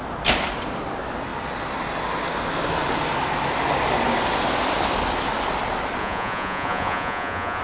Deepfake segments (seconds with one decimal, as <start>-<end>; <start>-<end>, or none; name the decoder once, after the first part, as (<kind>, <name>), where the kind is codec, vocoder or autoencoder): 6.0-7.6 (vocoder, Vocos)